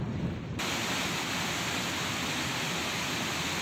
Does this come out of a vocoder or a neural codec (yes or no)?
no